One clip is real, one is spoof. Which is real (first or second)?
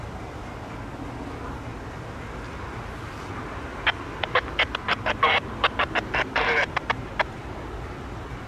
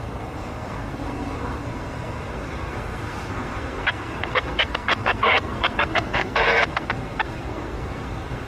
first